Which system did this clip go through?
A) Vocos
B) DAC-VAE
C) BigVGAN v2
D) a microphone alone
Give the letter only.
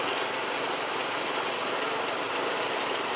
D